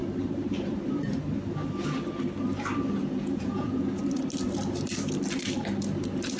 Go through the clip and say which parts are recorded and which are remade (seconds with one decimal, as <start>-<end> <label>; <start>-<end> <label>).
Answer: 0.0-3.0 recorded; 3.0-4.0 remade; 4.0-6.4 recorded